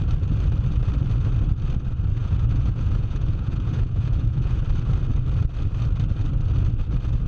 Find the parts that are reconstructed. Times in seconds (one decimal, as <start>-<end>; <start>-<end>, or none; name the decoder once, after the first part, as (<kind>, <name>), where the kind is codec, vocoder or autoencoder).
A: 2.2-4.6 (vocoder, Vocos)